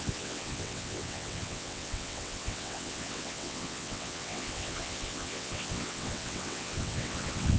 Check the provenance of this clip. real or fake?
fake